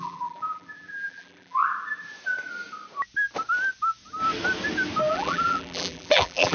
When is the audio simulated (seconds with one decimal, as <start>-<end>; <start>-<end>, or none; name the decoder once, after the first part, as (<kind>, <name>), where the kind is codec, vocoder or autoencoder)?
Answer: 0.0-1.6 (vocoder, BigVGAN v2); 5.1-6.5